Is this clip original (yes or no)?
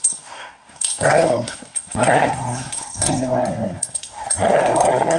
no